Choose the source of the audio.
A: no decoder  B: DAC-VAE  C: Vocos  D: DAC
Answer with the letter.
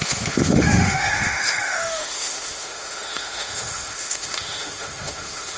B